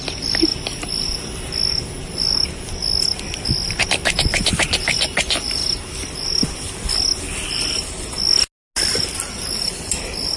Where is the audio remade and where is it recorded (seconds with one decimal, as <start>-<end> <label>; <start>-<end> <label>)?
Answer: 0.0-10.4 recorded